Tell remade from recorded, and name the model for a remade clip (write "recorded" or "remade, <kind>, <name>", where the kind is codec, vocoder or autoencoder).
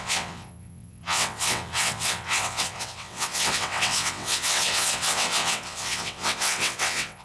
remade, vocoder, WaveNeXt